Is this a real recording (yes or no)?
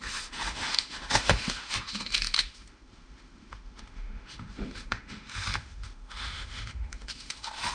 no